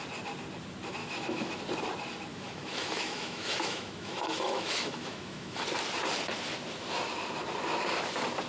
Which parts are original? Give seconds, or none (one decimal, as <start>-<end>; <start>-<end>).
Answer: 0.0-1.0; 1.6-2.3; 5.6-8.5